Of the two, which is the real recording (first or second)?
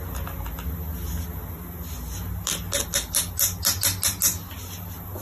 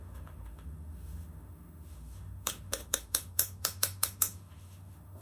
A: first